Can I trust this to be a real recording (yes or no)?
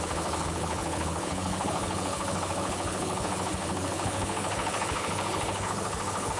no